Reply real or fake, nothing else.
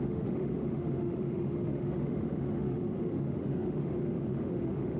fake